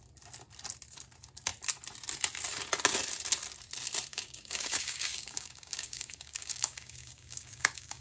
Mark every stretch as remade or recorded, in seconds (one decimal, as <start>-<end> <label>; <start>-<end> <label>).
0.0-4.1 recorded; 4.1-8.0 remade